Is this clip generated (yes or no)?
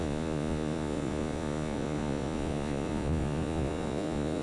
yes